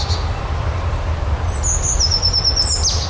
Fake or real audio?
real